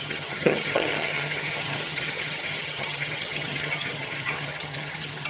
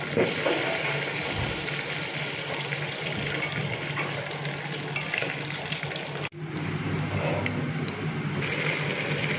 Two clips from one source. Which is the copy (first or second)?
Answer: first